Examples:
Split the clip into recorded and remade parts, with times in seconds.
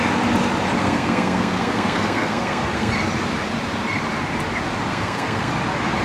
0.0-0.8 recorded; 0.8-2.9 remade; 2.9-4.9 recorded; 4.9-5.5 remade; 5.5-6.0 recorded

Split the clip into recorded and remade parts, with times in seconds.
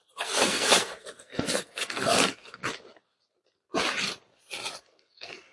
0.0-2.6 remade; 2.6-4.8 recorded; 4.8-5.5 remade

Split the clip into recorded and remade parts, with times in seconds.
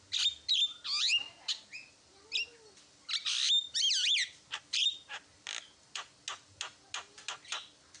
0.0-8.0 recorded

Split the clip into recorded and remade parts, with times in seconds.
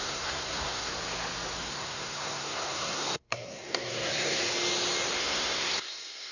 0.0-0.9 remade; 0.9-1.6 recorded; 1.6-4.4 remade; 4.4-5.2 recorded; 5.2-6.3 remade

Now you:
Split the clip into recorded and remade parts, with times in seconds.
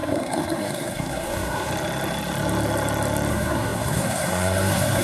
0.0-1.7 remade; 1.7-3.3 recorded; 3.3-5.0 remade